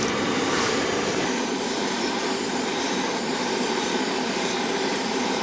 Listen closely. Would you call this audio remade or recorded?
remade